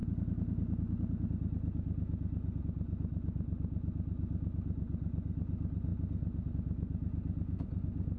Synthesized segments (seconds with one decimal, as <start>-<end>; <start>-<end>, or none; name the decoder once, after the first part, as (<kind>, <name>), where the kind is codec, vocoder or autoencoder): none